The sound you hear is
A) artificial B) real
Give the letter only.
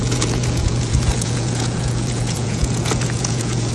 A